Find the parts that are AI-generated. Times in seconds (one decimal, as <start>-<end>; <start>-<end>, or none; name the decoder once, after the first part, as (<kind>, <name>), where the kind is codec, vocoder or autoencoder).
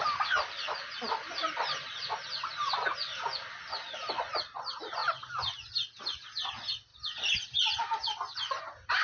none